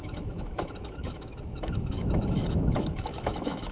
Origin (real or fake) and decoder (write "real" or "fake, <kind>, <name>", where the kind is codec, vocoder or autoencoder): fake, autoencoder, DAC-VAE